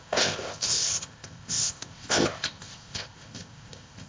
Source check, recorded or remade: remade